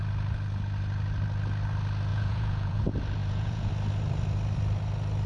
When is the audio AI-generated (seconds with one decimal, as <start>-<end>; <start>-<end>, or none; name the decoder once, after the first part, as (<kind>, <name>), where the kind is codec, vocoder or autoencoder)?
2.1-2.8 (vocoder, Vocos); 3.2-3.7